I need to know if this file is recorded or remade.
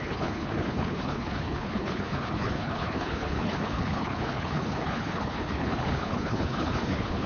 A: remade